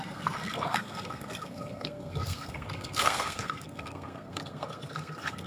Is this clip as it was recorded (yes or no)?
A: no